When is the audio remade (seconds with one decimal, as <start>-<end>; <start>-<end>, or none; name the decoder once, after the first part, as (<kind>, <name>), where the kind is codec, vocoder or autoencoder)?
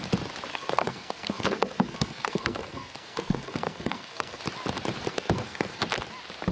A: 0.5-4.4 (codec, SNAC); 5.1-5.8